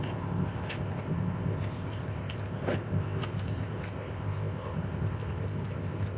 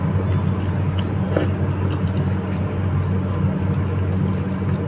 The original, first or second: second